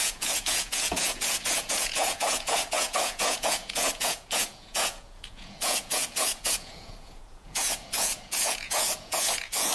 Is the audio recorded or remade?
remade